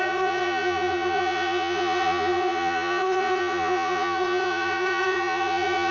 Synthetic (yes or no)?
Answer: yes